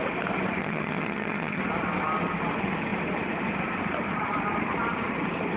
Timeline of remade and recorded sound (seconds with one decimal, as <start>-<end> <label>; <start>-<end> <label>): 0.0-0.6 recorded; 0.6-1.6 remade; 1.6-5.6 recorded